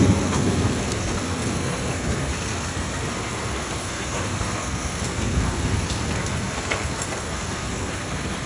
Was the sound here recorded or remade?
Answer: remade